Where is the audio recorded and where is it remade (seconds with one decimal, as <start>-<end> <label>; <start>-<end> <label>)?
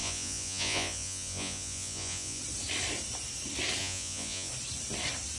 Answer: 0.0-2.4 remade; 2.4-3.8 recorded; 3.8-4.5 remade; 4.5-5.4 recorded